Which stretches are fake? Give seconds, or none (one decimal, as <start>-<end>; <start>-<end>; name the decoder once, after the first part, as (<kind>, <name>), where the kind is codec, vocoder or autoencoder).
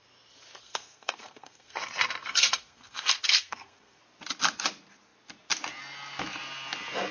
0.6-1.8 (codec, SNAC); 2.2-4.0